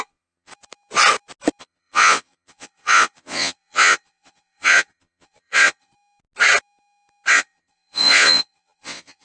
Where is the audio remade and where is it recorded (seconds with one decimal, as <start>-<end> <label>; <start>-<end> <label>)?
0.0-0.5 remade; 0.5-1.6 recorded; 1.6-5.9 remade; 5.9-7.3 recorded; 7.3-9.2 remade